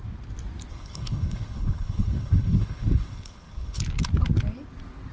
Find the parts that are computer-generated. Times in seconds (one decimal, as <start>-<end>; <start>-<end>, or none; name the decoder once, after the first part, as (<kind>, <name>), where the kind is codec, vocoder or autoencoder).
0.7-3.8 (codec, HILCodec)